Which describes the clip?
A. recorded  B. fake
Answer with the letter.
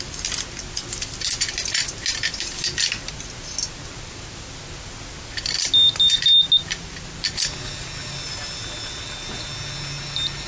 A